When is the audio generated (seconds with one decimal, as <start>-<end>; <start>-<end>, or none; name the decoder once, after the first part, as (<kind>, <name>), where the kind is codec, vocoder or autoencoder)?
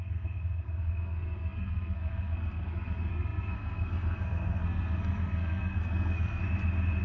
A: 0.0-6.4 (codec, SNAC)